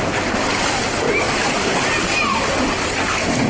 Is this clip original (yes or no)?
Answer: yes